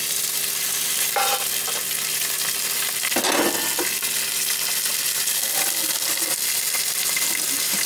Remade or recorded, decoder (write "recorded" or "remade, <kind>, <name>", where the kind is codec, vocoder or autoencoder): recorded